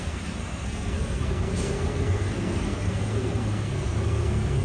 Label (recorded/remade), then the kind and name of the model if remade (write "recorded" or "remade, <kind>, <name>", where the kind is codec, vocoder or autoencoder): remade, codec, SNAC